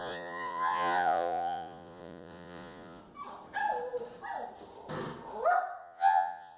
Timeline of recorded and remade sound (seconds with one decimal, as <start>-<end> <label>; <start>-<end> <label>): 0.0-3.0 remade; 3.0-5.8 recorded; 5.8-6.6 remade